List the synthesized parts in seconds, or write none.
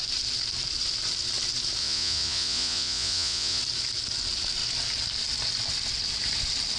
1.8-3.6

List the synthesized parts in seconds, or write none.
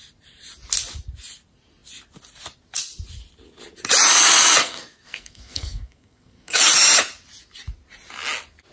4.6-6.6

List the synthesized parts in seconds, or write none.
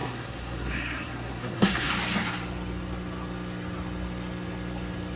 0.0-1.9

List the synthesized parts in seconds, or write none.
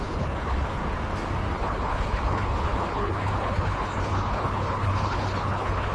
0.0-0.8; 1.5-5.9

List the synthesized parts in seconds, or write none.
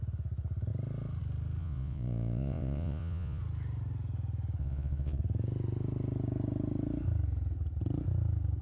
1.6-3.4; 4.6-5.2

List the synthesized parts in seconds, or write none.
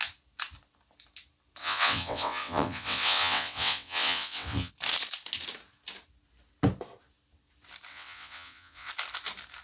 1.6-4.7; 7.9-8.9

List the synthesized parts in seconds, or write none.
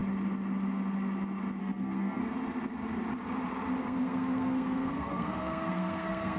1.6-2.2; 3.8-6.4